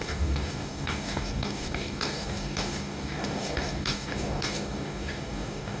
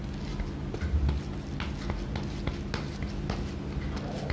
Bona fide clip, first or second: second